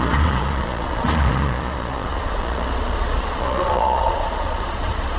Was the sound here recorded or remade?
remade